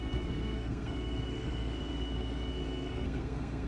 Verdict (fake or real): fake